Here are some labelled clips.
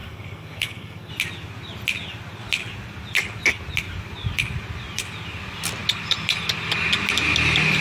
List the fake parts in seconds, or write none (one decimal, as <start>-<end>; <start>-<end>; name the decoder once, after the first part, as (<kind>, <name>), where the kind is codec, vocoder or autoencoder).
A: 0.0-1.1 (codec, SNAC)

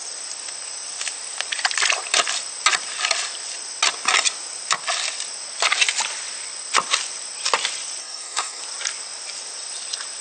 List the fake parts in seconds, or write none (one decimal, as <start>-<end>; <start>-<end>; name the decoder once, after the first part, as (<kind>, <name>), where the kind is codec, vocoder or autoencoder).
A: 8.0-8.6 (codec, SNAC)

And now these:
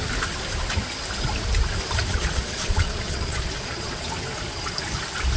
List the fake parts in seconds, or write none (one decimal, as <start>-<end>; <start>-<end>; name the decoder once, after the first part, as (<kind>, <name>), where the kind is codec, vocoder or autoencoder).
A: 2.1-4.1 (vocoder, Vocos)